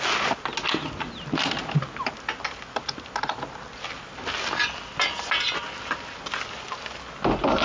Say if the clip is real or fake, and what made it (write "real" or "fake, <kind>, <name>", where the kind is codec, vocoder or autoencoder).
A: real